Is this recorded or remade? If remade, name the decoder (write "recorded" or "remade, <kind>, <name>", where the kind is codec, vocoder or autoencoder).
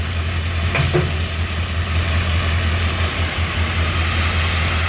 recorded